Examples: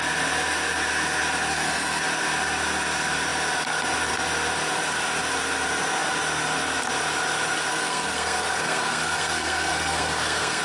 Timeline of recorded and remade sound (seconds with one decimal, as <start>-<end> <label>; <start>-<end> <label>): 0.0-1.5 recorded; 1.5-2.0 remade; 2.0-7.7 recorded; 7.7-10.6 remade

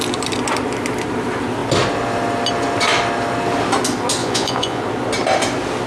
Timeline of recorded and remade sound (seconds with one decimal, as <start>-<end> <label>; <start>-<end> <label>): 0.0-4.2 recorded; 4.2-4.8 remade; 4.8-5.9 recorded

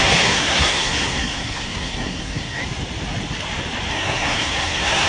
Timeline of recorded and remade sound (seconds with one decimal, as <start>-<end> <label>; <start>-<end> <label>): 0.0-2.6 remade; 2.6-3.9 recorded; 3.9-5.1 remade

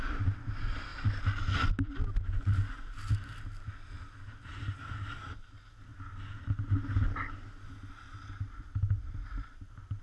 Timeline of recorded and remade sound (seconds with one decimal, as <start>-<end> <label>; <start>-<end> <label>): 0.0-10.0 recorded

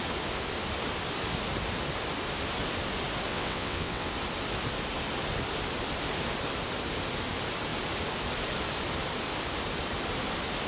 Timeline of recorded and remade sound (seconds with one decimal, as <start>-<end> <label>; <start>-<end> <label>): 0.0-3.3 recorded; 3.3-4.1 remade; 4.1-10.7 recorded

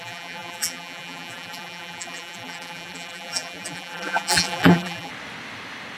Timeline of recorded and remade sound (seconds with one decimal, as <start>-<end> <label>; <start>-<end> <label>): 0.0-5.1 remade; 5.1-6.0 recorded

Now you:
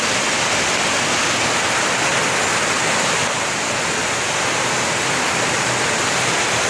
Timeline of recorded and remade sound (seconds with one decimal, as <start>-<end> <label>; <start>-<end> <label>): 0.0-6.7 recorded

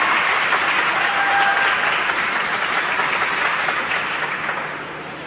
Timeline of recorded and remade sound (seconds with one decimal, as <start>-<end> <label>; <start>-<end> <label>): 0.0-5.3 recorded